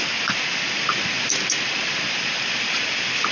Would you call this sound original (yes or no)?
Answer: yes